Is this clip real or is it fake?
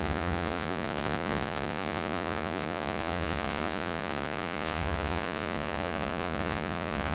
fake